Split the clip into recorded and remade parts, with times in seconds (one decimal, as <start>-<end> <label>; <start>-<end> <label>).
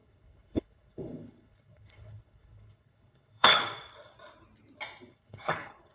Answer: 0.0-3.6 remade; 3.6-5.1 recorded; 5.1-5.9 remade